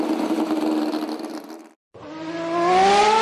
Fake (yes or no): no